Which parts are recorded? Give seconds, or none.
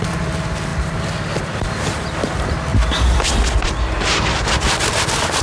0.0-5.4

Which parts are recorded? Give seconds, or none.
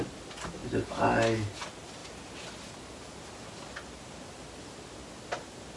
0.0-5.8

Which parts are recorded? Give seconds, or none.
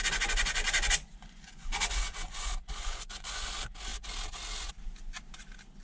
3.5-5.8